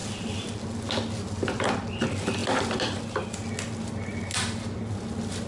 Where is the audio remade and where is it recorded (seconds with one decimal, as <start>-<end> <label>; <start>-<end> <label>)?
0.0-5.5 recorded